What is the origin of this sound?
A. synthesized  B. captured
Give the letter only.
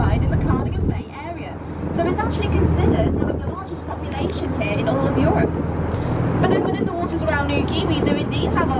B